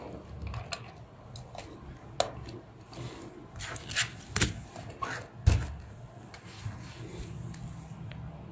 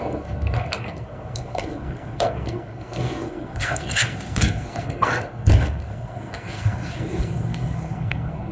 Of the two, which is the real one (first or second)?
first